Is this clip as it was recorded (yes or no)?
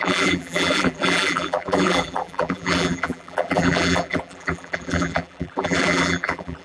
no